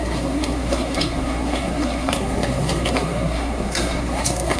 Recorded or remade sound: remade